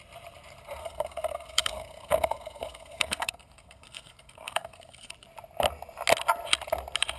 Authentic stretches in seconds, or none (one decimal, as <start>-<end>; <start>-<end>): 0.0-0.8; 5.1-7.2